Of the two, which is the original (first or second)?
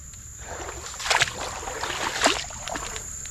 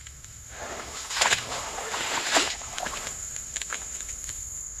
first